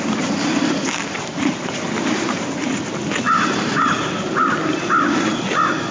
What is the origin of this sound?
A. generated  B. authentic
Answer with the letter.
B